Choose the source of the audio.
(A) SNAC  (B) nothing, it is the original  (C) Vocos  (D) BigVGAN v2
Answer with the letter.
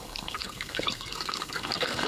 A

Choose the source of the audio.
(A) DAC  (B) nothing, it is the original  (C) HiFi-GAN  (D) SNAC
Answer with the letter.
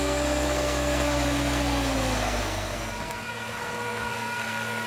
D